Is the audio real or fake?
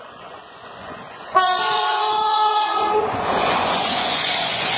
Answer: fake